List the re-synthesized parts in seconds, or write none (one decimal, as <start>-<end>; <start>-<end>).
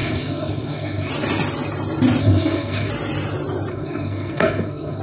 0.0-1.1; 2.2-2.9; 3.7-5.0